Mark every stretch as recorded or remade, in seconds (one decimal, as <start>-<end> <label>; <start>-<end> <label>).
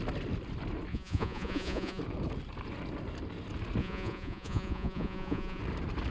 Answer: 0.0-0.9 recorded; 0.9-2.0 remade; 2.0-3.8 recorded; 3.8-5.6 remade; 5.6-6.1 recorded